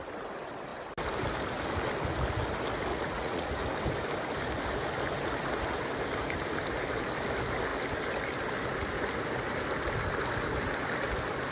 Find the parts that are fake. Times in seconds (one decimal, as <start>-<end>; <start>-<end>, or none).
2.9-3.5

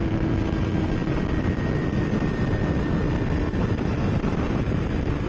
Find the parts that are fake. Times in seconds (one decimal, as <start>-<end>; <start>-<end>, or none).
none

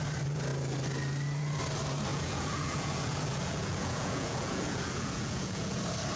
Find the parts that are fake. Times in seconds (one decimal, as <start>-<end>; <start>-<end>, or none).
2.1-5.8